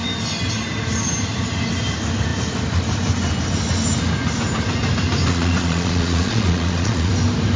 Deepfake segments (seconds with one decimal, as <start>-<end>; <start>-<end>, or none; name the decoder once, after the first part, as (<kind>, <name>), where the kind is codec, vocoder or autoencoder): 5.3-7.1 (vocoder, Vocos)